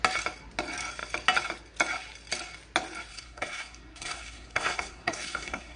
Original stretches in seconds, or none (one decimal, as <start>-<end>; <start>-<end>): 0.0-3.1